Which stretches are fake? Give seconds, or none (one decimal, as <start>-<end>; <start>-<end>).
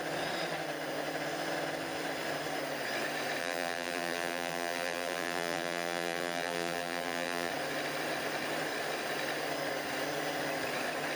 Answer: 3.4-7.5